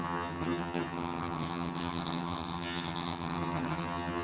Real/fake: fake